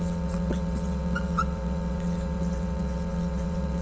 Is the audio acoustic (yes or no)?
no